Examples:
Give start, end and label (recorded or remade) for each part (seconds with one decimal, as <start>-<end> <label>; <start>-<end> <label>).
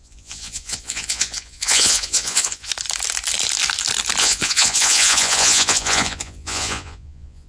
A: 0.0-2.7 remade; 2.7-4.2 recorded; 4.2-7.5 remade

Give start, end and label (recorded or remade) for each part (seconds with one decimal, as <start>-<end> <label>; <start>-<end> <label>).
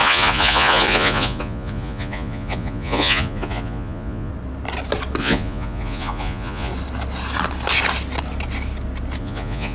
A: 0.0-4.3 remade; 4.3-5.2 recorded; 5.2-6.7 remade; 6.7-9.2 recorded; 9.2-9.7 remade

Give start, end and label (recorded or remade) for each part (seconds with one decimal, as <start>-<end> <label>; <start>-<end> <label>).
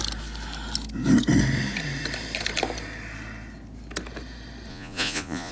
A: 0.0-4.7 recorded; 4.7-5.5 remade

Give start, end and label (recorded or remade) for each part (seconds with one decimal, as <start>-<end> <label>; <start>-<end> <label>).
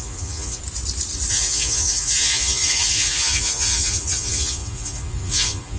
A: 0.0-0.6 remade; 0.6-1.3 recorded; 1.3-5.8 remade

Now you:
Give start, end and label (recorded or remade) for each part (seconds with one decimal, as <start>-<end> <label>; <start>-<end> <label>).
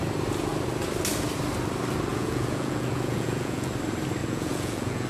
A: 0.0-2.1 recorded; 2.1-3.7 remade; 3.7-4.2 recorded; 4.2-5.1 remade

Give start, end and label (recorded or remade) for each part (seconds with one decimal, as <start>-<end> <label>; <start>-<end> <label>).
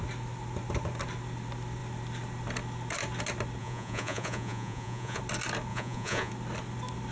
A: 0.0-3.6 recorded; 3.6-5.2 remade; 5.2-5.7 recorded; 5.7-6.3 remade; 6.3-7.1 recorded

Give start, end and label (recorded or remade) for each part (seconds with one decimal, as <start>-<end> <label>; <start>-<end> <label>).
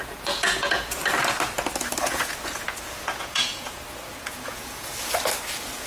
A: 0.0-1.0 remade; 1.0-2.0 recorded; 2.0-4.9 remade; 4.9-5.5 recorded; 5.5-5.9 remade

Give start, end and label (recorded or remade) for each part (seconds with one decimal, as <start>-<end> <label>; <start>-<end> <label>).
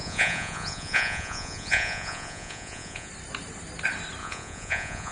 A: 0.0-3.1 remade; 3.1-4.2 recorded; 4.2-5.1 remade